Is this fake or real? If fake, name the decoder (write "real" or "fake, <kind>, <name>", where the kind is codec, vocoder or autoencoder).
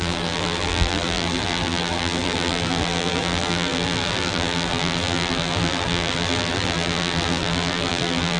fake, vocoder, BigVGAN v2